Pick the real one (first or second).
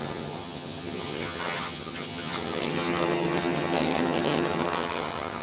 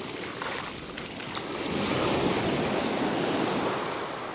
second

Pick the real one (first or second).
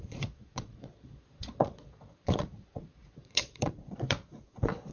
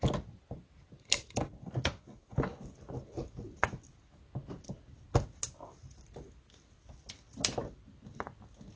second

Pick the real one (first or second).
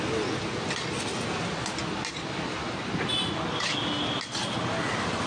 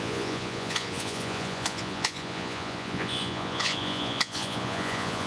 first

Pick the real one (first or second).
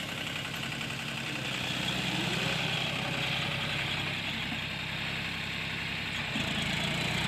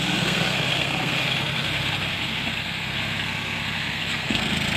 first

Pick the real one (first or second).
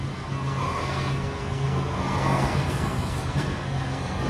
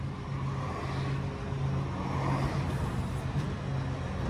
second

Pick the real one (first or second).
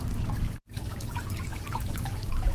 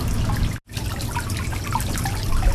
second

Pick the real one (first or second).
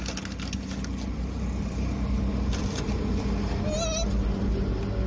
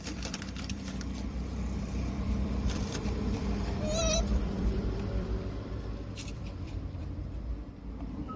first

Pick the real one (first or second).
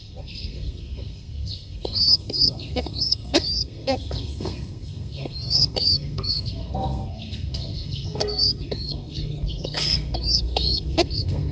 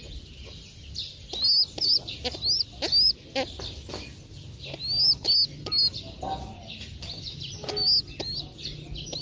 second